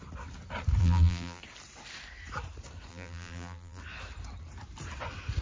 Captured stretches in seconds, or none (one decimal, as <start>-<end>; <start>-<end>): 0.0-0.8; 1.4-2.9; 3.8-5.4